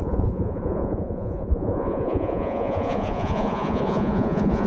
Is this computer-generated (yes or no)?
yes